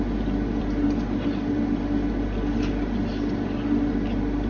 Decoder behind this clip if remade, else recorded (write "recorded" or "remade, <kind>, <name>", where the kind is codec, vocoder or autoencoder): recorded